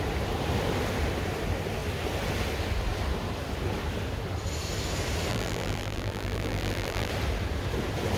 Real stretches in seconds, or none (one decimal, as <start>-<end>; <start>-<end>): 0.0-5.3; 7.1-8.2